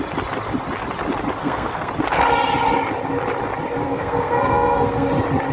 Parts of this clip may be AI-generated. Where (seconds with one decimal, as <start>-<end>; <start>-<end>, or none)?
1.4-1.9; 3.8-5.1